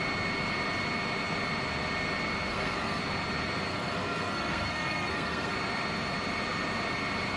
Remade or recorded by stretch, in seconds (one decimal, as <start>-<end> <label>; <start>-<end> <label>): 0.0-2.5 recorded; 2.5-3.0 remade; 3.0-3.7 recorded; 3.7-5.5 remade; 5.5-7.4 recorded